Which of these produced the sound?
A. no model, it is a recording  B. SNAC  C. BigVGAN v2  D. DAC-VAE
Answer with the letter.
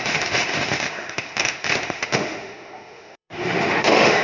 D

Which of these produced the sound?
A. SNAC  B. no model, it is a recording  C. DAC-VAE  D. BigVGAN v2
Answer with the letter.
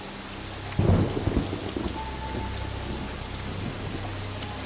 B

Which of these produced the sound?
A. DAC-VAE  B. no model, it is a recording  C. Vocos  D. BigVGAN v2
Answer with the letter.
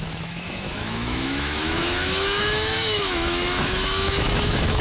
A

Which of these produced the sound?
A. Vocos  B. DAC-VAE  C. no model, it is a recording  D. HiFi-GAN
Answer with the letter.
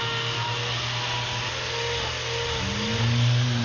C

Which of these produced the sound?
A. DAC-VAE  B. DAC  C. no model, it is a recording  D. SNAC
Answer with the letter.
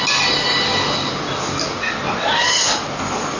C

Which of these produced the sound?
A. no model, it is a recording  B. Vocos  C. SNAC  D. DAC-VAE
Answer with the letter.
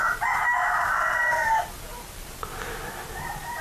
A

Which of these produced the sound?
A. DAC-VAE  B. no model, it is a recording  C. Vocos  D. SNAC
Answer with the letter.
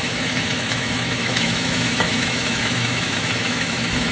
A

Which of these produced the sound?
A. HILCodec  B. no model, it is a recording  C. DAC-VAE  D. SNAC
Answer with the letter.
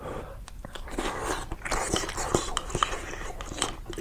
B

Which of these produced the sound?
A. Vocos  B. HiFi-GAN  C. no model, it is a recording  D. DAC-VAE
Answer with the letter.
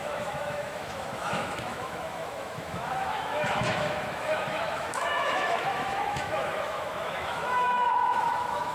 D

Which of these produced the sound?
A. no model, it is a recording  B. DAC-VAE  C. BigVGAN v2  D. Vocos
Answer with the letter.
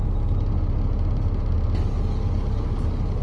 A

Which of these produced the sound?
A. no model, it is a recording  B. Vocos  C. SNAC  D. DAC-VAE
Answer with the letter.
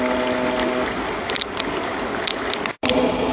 A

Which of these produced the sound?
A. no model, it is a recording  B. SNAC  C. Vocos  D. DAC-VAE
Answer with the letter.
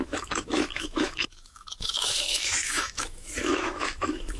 D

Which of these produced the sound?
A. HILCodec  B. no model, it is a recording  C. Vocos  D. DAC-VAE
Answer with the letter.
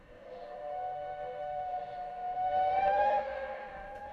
D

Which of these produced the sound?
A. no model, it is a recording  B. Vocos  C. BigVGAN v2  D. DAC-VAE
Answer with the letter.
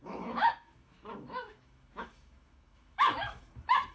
D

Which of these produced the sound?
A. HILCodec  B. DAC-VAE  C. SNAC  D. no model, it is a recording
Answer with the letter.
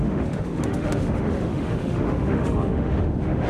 B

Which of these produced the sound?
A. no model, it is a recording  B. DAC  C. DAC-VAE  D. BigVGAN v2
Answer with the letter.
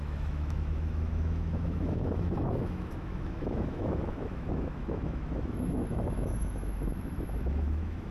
C